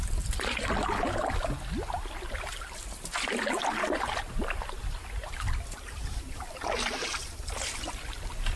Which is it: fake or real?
real